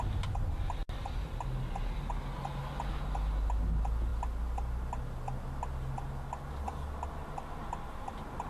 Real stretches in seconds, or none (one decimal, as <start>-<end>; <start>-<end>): 0.0-8.5

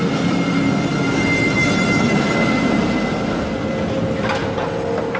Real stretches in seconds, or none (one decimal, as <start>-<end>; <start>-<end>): 0.0-5.2